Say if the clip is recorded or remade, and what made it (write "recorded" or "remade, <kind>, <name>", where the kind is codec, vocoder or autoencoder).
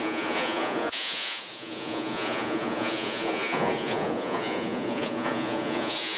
remade, vocoder, Vocos